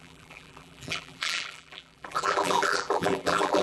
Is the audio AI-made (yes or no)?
yes